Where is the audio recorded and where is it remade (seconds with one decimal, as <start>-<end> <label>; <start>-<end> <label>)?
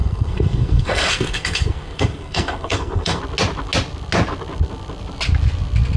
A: 0.0-3.2 remade; 3.2-6.0 recorded